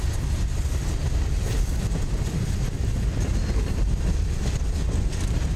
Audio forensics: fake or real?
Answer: real